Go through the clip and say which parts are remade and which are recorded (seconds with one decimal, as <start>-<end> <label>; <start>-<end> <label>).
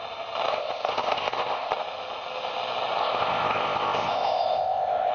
0.0-0.5 recorded; 0.5-1.7 remade; 1.7-3.0 recorded; 3.0-5.1 remade